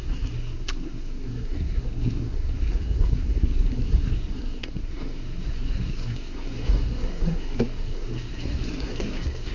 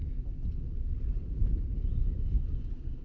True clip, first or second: second